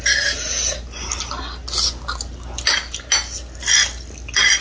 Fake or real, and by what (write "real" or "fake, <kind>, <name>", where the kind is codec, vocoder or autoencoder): real